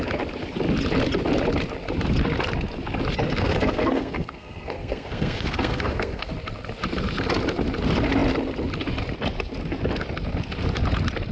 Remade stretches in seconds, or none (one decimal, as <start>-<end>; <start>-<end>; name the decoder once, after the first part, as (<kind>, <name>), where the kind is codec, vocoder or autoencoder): 3.4-6.3 (codec, SNAC)